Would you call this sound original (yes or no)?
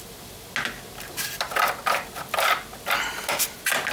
yes